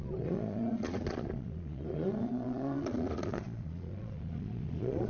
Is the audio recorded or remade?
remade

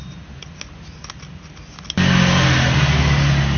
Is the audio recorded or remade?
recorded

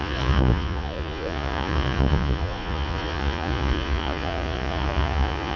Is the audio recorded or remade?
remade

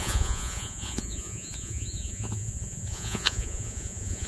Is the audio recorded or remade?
remade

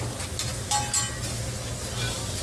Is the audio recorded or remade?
recorded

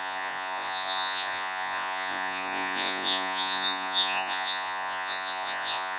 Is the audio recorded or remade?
remade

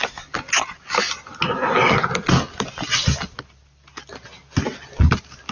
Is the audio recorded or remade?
recorded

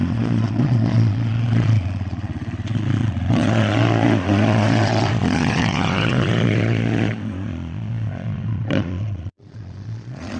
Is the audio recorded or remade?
remade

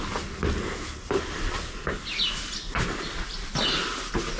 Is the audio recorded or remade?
recorded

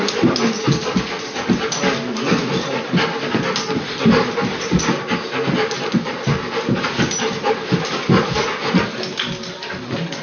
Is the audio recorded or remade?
recorded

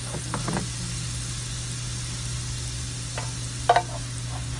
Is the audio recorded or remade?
recorded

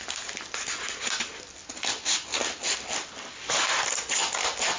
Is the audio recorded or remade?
recorded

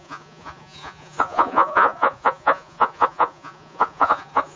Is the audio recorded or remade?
remade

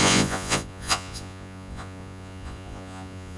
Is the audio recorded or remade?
remade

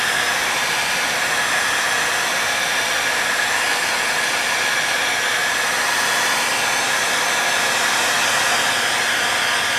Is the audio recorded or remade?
recorded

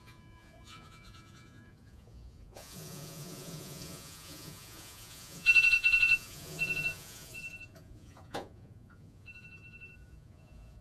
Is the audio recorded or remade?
remade